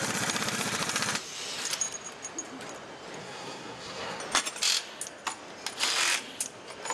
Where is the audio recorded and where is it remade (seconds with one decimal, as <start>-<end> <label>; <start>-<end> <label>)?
0.0-3.2 recorded; 3.2-4.2 remade; 4.2-6.9 recorded

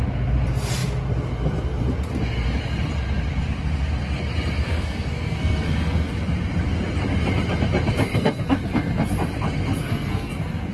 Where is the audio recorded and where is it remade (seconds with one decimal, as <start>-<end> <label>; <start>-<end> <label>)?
0.0-4.6 recorded; 4.6-6.1 remade; 6.1-8.1 recorded; 8.1-9.1 remade; 9.1-9.8 recorded; 9.8-10.7 remade

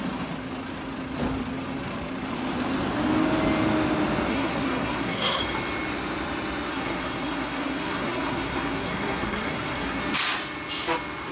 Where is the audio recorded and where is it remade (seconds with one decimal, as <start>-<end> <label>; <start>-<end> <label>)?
0.0-4.3 recorded; 4.3-5.4 remade; 5.4-6.7 recorded; 6.7-10.0 remade; 10.0-11.3 recorded

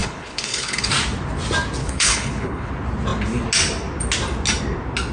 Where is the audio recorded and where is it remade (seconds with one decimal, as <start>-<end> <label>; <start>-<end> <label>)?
0.0-0.9 remade; 0.9-1.8 recorded; 1.8-2.7 remade; 2.7-5.1 recorded

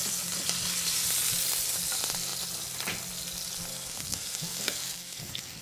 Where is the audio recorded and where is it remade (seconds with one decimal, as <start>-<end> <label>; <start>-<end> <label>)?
0.0-3.7 recorded; 3.7-5.6 remade